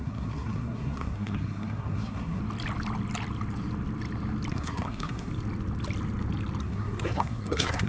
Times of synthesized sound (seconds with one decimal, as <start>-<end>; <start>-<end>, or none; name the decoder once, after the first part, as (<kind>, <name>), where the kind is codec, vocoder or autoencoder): 0.0-2.4 (codec, SNAC); 4.5-5.3; 6.6-7.9